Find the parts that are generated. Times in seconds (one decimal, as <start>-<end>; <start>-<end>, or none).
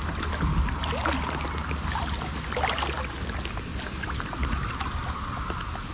3.7-4.4